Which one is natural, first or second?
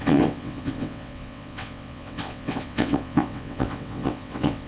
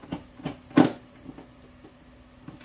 second